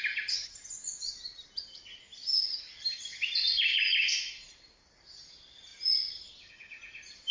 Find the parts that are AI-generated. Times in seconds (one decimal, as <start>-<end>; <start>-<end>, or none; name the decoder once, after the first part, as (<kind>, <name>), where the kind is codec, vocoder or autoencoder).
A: none